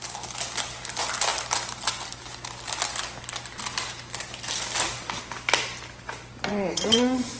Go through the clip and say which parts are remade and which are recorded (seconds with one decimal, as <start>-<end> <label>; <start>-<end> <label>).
0.0-6.5 recorded; 6.5-7.4 remade